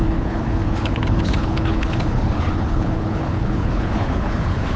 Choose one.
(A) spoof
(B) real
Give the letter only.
A